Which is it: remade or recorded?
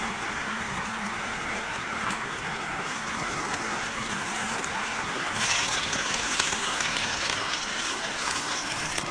remade